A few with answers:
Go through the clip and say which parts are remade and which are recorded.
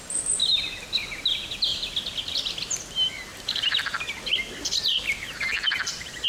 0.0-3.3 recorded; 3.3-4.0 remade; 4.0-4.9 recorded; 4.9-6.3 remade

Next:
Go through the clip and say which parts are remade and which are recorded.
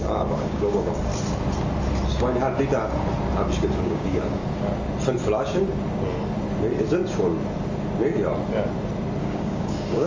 0.0-1.1 remade; 1.1-3.7 recorded; 3.7-4.4 remade; 4.4-9.2 recorded; 9.2-10.1 remade